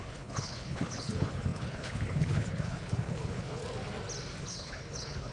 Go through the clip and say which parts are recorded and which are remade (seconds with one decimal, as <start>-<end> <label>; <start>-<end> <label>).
0.0-3.6 remade; 3.6-4.4 recorded; 4.4-5.3 remade